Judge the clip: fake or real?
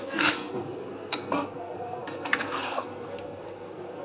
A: fake